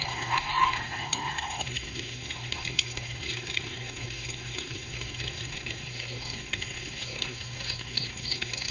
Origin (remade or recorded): remade